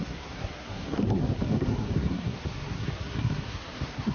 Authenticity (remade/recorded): remade